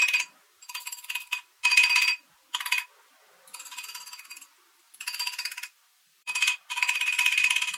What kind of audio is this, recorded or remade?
remade